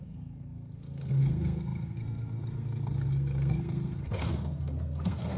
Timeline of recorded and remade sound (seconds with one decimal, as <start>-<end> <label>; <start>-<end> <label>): 0.0-5.4 remade